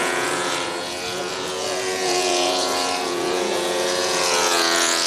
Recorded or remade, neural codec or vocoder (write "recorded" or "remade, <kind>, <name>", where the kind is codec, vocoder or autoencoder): remade, vocoder, Vocos